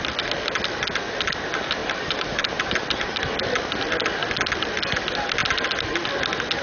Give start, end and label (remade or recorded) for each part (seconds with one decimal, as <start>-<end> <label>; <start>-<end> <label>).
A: 0.0-1.8 recorded; 1.8-3.2 remade; 3.2-6.6 recorded